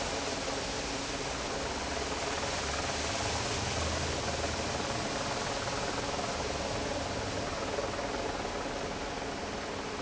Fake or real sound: real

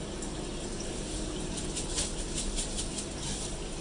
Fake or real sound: real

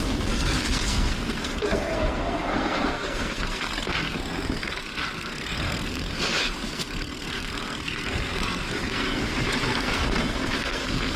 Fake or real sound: fake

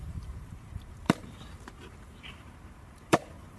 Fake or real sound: fake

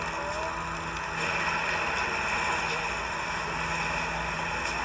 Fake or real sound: real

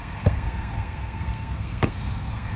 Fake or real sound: fake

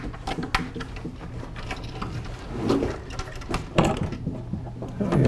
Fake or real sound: real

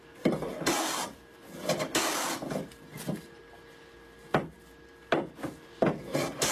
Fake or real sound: real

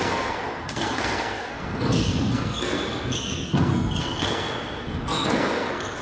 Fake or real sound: fake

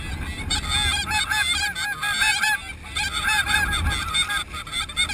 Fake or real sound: real